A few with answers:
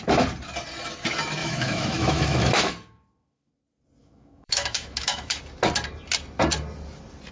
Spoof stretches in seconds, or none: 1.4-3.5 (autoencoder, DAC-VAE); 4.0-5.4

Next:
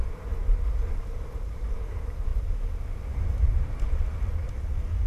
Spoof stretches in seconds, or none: none

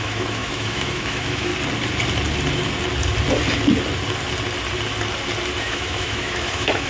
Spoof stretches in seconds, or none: 0.0-1.5 (autoencoder, DAC-VAE); 5.6-6.9

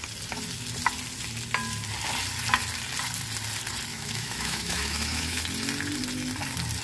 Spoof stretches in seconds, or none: 3.9-5.4 (autoencoder, DAC-VAE)